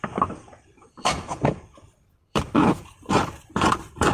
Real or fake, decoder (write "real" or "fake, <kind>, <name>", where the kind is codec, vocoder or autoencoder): fake, vocoder, BigVGAN v2